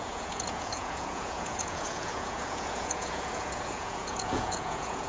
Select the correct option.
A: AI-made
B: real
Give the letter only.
A